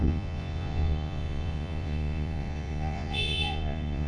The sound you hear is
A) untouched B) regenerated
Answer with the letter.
B